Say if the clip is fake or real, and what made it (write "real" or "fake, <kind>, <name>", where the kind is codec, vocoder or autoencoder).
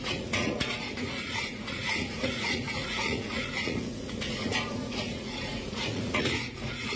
fake, vocoder, Vocos